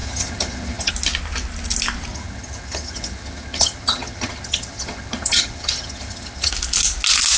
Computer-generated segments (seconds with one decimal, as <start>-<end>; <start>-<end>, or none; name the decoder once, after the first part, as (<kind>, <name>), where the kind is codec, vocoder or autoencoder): 0.0-0.9 (vocoder, HiFi-GAN); 2.1-6.5